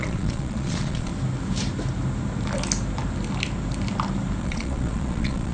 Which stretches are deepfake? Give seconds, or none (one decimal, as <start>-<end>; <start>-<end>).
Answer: 0.0-1.1; 4.4-5.5